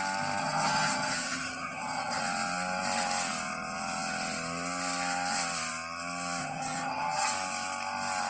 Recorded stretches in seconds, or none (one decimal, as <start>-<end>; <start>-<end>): 0.0-0.4; 2.2-6.4; 7.3-8.3